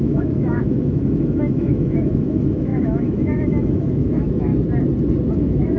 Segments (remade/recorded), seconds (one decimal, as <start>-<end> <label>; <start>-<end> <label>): 0.0-4.5 remade; 4.5-5.3 recorded; 5.3-5.8 remade